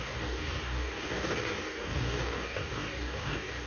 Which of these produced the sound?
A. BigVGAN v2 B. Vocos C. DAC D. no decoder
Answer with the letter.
C